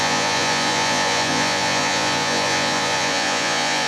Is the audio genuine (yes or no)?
no